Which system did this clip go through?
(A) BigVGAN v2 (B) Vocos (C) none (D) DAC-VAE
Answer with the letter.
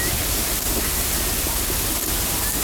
C